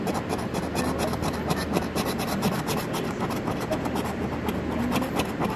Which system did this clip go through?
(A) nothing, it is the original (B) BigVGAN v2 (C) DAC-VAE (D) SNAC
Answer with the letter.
A